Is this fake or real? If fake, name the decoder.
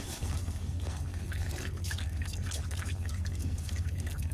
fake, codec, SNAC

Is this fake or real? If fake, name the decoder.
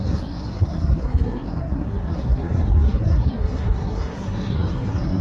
fake, codec, SNAC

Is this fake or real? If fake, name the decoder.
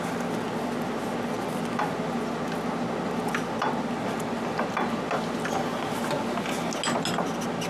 real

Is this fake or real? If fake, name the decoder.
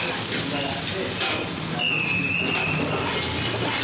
real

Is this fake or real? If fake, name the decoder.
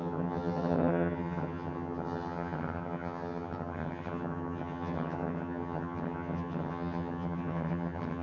fake, vocoder, HiFi-GAN